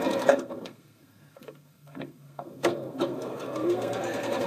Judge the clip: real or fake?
fake